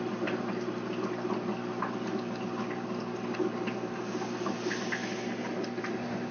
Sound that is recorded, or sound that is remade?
recorded